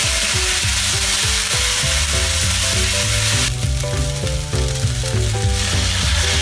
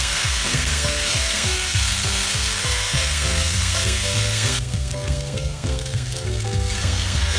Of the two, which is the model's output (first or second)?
second